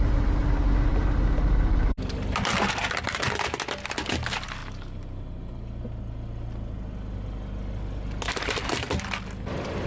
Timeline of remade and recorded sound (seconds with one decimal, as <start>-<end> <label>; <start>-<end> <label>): 0.0-9.9 recorded